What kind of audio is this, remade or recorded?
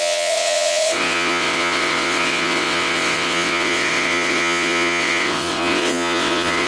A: remade